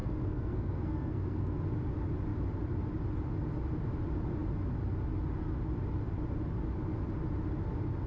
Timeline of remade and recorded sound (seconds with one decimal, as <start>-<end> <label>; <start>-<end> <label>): 0.0-1.6 remade; 1.6-8.1 recorded